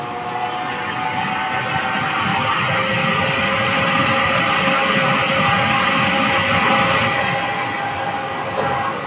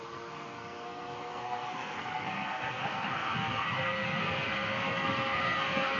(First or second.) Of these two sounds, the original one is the first